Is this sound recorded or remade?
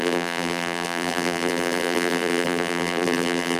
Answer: remade